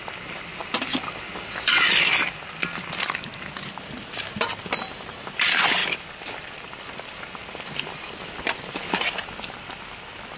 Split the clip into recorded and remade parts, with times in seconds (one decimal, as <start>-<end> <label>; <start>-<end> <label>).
0.0-5.8 recorded; 5.8-6.8 remade; 6.8-7.4 recorded; 7.4-8.8 remade; 8.8-10.4 recorded